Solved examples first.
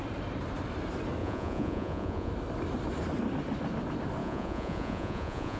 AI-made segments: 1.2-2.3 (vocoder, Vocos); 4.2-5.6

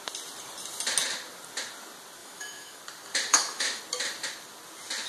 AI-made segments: 2.2-2.8 (autoencoder, DAC-VAE); 3.3-3.8